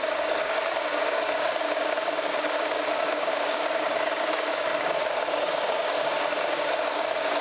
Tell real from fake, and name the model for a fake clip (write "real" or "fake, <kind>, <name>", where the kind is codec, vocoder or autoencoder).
fake, codec, DAC